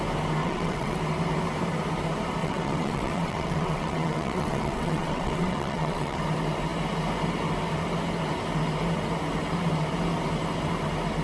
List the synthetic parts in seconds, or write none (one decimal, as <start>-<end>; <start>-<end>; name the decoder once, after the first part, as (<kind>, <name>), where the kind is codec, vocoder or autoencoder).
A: 0.4-1.0 (vocoder, WaveNeXt); 2.4-6.2